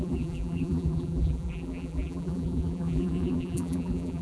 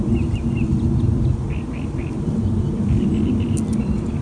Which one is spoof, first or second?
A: first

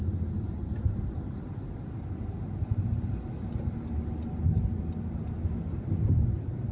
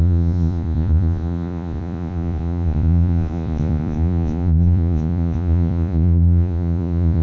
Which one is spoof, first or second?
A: second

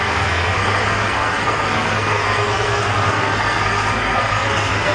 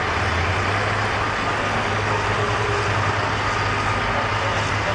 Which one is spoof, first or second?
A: first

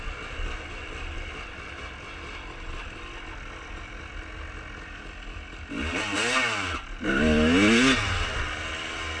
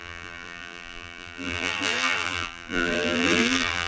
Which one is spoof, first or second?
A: second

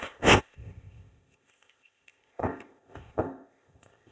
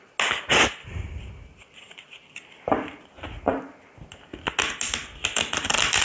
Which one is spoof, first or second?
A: first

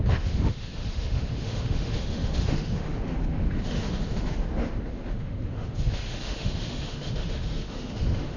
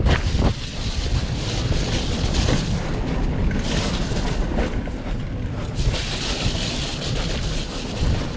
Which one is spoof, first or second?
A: first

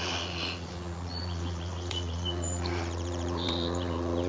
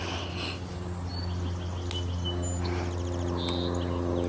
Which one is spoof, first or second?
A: first